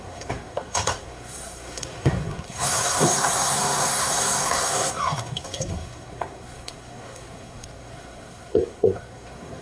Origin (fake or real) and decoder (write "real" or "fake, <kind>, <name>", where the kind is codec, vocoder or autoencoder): fake, codec, SNAC